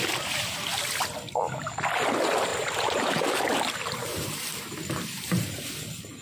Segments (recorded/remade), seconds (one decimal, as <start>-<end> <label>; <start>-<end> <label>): 0.0-2.5 recorded; 2.5-3.4 remade; 3.4-4.1 recorded; 4.1-5.5 remade; 5.5-6.2 recorded